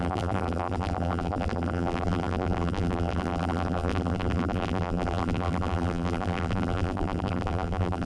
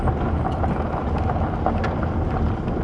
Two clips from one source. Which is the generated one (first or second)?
first